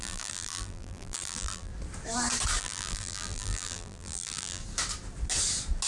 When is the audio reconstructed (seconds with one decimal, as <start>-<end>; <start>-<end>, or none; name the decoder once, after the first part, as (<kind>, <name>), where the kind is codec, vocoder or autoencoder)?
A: 0.0-1.7 (vocoder, BigVGAN v2); 2.6-4.6

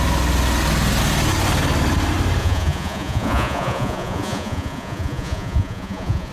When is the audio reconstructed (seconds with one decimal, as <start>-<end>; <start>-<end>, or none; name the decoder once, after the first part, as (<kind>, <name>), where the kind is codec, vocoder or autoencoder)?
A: 2.4-6.3 (vocoder, Vocos)

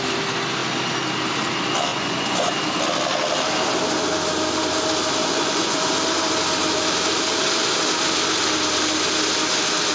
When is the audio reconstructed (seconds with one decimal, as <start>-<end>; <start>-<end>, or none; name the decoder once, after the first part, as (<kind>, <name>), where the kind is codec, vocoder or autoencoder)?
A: 1.9-2.5 (vocoder, Vocos); 5.2-5.9

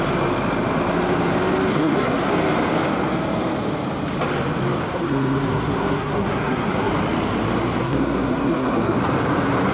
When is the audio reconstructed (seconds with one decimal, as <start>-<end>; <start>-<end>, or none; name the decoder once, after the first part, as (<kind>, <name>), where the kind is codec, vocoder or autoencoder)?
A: 1.7-2.3 (codec, SNAC); 4.9-6.9; 7.8-9.0

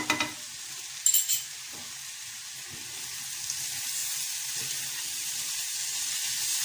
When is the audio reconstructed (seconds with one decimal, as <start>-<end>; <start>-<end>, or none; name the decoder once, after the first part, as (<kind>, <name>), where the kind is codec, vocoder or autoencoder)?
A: none

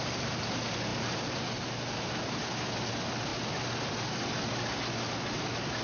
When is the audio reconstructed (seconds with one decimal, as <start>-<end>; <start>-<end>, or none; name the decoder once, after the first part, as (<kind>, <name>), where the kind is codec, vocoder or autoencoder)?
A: none